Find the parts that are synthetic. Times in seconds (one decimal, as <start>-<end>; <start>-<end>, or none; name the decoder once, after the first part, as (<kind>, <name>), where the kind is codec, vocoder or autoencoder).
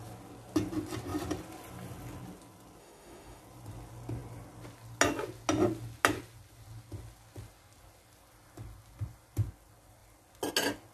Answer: 2.8-3.4 (autoencoder, DAC-VAE)